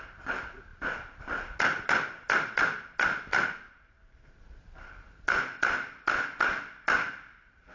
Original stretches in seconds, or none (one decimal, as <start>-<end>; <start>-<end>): 0.0-0.7; 1.2-3.3; 4.9-7.7